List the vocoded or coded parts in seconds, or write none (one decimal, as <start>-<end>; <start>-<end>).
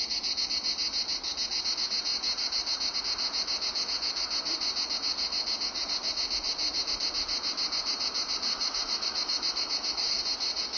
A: 8.5-10.2